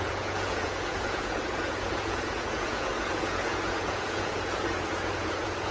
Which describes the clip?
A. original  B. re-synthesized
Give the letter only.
B